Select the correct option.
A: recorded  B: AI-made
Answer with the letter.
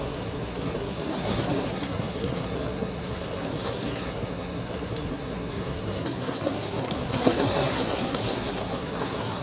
B